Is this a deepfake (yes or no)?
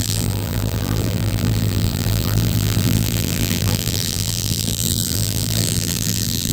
yes